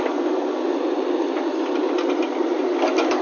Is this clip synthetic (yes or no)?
no